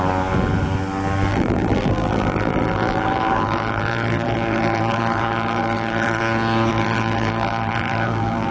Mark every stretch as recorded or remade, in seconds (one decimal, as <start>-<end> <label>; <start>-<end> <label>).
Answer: 0.0-1.3 recorded; 1.3-6.2 remade; 6.2-6.7 recorded; 6.7-8.5 remade